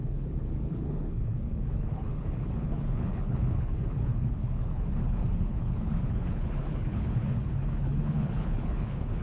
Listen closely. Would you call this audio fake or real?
fake